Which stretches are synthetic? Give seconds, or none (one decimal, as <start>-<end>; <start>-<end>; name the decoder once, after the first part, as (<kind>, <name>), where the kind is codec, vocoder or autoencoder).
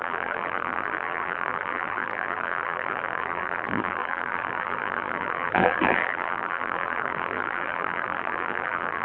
0.0-9.0 (vocoder, BigVGAN v2)